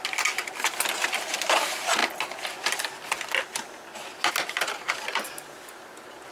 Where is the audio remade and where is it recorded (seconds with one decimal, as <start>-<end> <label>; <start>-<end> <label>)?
0.0-6.3 recorded